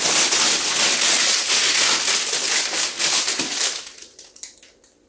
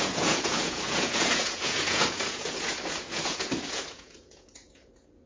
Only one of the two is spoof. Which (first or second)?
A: second